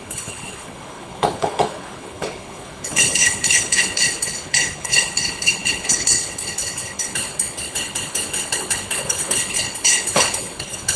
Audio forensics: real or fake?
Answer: fake